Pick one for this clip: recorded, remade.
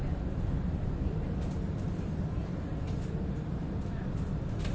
recorded